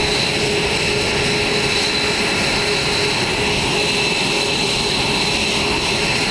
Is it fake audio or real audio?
real